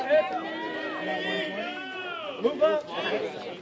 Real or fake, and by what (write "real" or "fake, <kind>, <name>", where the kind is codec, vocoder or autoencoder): real